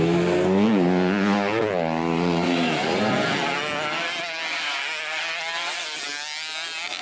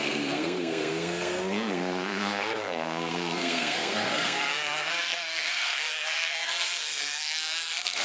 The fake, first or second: second